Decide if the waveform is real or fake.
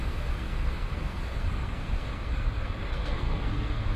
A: fake